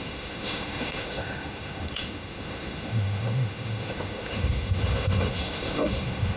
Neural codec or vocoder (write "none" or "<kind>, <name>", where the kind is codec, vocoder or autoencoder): autoencoder, DAC-VAE